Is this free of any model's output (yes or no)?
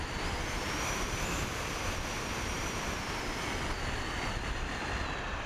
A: yes